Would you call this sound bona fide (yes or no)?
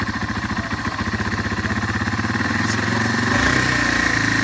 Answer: no